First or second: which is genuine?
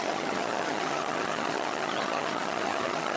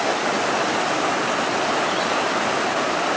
second